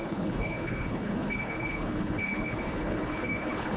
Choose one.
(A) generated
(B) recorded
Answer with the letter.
A